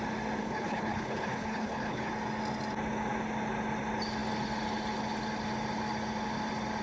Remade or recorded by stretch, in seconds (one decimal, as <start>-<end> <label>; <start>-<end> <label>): 0.0-0.4 recorded; 0.4-2.1 remade; 2.1-6.8 recorded